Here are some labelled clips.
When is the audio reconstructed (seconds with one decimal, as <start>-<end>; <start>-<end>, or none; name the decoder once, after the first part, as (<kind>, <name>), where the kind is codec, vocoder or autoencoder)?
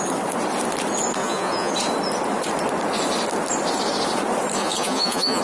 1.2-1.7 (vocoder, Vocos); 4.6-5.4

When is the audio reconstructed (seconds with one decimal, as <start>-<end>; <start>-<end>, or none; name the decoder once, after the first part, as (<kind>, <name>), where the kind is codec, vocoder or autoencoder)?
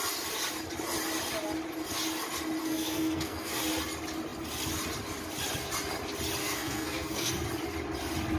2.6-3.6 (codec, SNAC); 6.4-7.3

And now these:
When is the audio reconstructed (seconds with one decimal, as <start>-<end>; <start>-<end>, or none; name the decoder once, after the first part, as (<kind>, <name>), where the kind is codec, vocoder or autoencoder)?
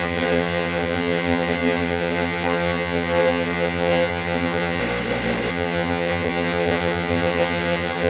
0.0-4.8 (vocoder, HiFi-GAN); 5.5-8.1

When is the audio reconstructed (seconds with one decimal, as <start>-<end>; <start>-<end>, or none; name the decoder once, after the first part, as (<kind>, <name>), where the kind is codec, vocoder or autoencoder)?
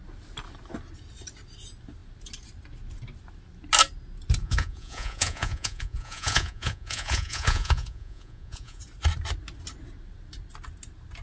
4.4-8.8 (vocoder, Vocos)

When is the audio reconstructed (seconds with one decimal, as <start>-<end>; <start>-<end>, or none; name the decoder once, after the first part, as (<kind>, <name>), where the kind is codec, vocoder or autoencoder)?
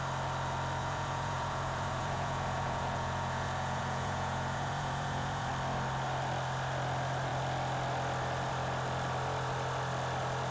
0.8-5.5 (vocoder, Vocos)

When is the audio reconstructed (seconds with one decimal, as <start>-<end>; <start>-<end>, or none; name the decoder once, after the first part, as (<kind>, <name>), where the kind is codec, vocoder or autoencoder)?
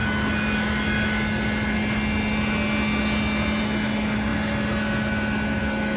3.6-4.3 (vocoder, BigVGAN v2); 5.6-6.0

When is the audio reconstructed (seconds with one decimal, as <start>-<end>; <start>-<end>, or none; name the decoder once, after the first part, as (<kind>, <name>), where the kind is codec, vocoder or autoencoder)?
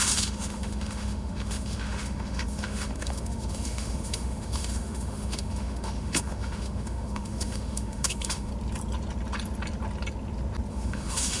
0.0-8.5 (autoencoder, DAC-VAE); 10.7-11.4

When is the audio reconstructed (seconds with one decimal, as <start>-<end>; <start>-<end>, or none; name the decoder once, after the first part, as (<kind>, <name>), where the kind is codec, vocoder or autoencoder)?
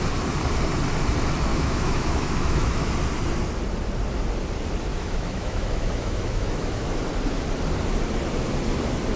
1.5-2.9 (autoencoder, DAC-VAE); 4.9-7.0